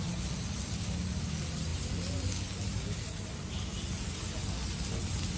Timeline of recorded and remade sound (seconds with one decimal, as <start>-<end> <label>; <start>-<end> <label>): 0.0-5.4 recorded